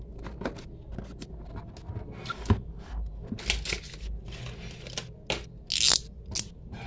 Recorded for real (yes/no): yes